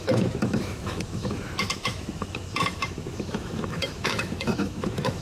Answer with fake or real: fake